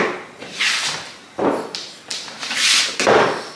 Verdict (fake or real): real